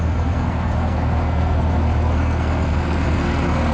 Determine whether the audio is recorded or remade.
remade